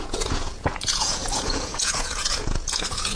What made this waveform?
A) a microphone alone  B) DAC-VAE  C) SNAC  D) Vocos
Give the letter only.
D